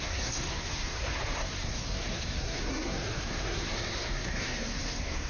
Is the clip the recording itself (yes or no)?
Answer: no